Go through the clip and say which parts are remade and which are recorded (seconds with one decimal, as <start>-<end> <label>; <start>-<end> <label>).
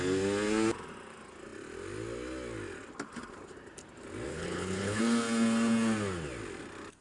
0.0-4.3 recorded; 4.3-5.0 remade; 5.0-7.0 recorded